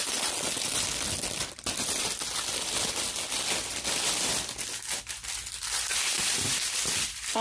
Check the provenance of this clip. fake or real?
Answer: fake